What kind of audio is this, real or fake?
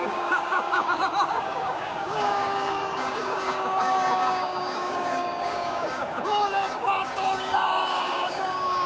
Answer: fake